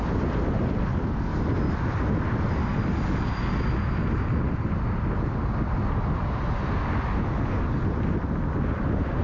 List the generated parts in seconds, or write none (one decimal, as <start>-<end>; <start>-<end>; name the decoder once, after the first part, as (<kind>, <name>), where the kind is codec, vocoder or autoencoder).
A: none